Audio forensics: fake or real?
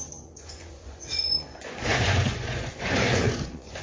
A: fake